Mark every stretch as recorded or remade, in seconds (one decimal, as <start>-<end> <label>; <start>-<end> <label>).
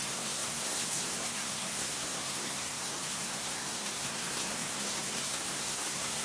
0.0-6.2 remade